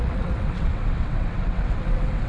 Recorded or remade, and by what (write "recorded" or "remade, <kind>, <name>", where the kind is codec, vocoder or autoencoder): remade, vocoder, WaveNeXt